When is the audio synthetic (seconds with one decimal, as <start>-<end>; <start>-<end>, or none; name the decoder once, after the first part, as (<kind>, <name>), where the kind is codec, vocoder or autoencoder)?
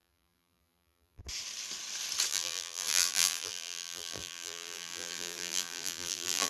0.0-1.2 (vocoder, BigVGAN v2); 2.3-6.5